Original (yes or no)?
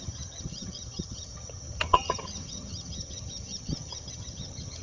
no